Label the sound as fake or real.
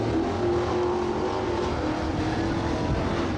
real